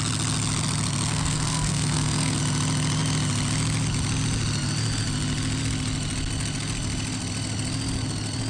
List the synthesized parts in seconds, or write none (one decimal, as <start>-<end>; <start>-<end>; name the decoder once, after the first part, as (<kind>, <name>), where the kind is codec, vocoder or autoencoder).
1.1-2.4 (codec, SNAC)

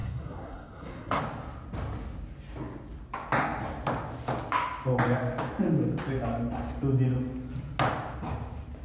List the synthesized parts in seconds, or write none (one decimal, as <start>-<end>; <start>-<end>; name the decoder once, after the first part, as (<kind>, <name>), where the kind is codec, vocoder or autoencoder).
0.0-1.2 (codec, SNAC)

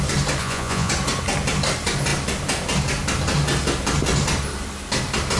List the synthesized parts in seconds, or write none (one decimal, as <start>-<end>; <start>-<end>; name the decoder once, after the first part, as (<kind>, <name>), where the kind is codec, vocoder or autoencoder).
0.4-0.9 (vocoder, Vocos)